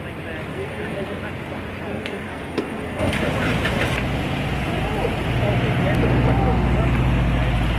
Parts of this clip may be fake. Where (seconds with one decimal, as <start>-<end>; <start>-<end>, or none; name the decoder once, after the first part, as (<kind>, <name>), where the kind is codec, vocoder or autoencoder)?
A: 0.5-1.2 (codec, SNAC); 1.9-3.2

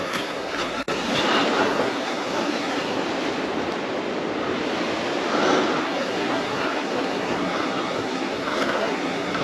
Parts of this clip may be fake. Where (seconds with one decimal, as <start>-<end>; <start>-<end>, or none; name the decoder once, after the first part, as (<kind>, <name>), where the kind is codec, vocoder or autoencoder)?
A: 0.0-1.1 (codec, SNAC); 1.6-3.0; 5.8-9.4

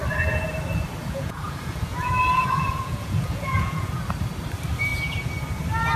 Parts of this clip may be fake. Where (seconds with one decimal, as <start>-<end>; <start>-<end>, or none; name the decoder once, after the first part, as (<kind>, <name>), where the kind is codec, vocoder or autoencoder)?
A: 1.0-3.9 (vocoder, Vocos)

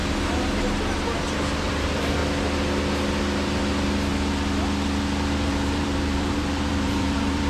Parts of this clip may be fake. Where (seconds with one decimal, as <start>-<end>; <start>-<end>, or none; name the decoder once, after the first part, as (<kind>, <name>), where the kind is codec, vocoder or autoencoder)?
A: 1.7-2.2 (vocoder, BigVGAN v2); 5.5-7.5

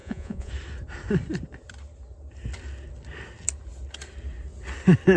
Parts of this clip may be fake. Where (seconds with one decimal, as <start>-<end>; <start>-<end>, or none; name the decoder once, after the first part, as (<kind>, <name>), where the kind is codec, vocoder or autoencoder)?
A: 0.0-0.5 (vocoder, Vocos)

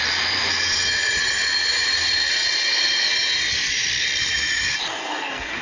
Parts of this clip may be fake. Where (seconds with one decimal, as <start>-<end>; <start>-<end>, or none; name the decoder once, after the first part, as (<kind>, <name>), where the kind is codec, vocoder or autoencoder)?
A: 5.0-5.6 (codec, SNAC)

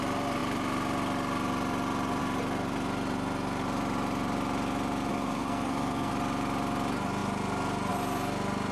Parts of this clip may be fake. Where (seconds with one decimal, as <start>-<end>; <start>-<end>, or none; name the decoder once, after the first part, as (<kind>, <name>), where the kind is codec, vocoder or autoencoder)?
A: 5.1-6.1 (codec, SNAC)

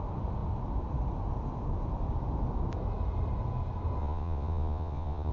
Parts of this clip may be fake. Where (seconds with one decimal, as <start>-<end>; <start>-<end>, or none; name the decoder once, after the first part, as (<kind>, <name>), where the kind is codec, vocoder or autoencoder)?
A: 4.0-5.3 (vocoder, Vocos)